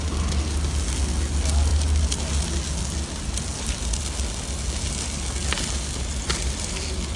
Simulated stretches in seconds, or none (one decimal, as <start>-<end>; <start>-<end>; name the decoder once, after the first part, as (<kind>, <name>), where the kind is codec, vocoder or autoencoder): none